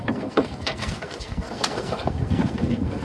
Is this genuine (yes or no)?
no